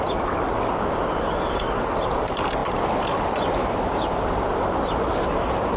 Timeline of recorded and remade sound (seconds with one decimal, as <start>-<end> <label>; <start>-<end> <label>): 0.0-5.8 recorded